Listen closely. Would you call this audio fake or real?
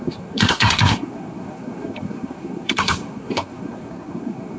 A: fake